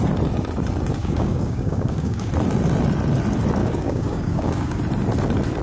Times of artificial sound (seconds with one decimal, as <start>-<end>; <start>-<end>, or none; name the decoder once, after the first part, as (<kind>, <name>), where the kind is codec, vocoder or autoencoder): 1.0-2.3 (codec, DAC); 3.6-4.8